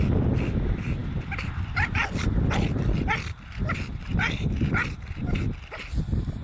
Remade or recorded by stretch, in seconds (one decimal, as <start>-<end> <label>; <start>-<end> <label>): 0.0-6.4 recorded